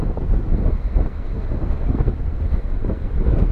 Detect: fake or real fake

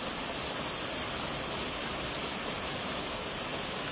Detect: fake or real real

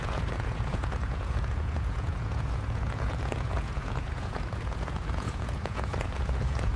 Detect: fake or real fake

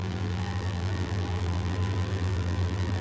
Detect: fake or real fake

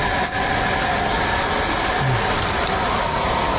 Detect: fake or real real